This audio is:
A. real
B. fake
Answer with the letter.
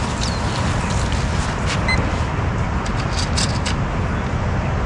A